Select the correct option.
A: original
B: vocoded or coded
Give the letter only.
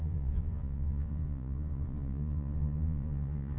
B